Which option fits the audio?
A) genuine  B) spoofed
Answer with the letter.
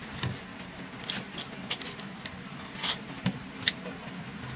A